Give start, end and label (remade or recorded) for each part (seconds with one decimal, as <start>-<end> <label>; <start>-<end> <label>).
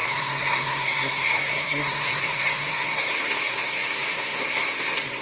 0.0-5.2 remade